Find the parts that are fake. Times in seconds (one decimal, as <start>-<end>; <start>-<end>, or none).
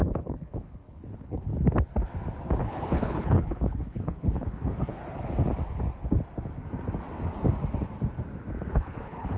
0.0-1.5; 2.6-5.0; 8.7-9.4